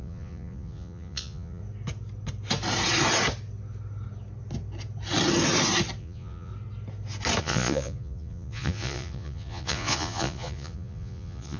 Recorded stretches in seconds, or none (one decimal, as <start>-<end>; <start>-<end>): 1.6-6.0; 6.5-7.4